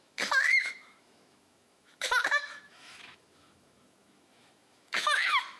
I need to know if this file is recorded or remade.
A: remade